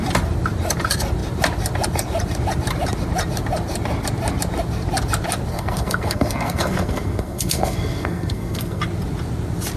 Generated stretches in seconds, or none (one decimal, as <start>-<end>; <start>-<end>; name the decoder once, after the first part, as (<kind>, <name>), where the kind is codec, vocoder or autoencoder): 5.5-8.8 (codec, SNAC)